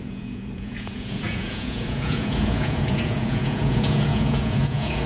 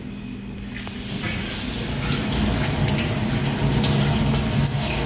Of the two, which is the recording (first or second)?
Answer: second